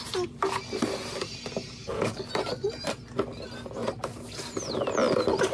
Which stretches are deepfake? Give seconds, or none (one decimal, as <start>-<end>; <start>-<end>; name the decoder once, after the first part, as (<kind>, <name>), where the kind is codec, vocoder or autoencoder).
1.8-2.3 (codec, DAC)